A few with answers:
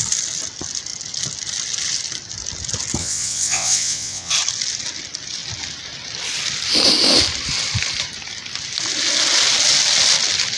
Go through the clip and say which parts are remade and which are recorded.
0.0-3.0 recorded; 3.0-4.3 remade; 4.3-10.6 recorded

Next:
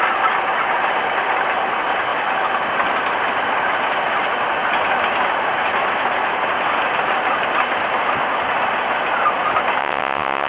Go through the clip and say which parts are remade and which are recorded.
0.0-9.8 recorded; 9.8-10.5 remade